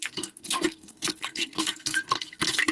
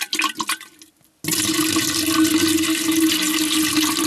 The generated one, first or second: first